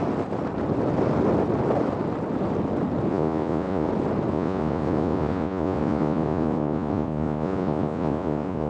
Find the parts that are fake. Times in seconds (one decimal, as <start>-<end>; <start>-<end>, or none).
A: 3.1-3.9; 4.3-8.7